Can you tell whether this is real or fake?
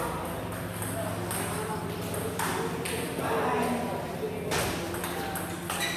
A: real